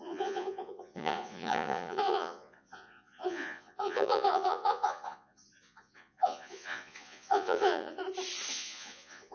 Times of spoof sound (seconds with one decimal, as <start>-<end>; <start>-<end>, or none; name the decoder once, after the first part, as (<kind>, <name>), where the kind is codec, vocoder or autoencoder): 0.0-8.0 (vocoder, Vocos); 8.5-9.3